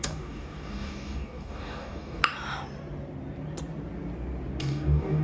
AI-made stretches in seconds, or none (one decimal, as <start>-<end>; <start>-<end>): 0.0-2.2; 4.6-5.2